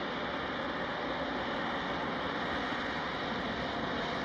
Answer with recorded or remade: recorded